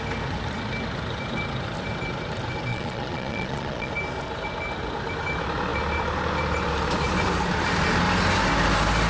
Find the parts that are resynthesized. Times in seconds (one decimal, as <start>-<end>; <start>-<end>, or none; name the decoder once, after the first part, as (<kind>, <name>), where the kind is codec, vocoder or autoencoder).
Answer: 2.7-3.9 (vocoder, Vocos)